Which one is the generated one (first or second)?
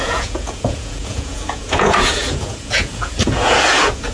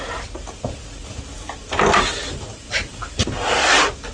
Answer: first